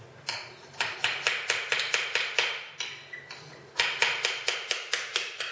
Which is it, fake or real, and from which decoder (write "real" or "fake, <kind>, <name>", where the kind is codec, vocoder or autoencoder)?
real